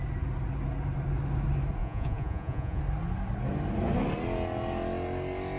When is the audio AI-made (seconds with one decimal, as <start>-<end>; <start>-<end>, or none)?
1.8-2.8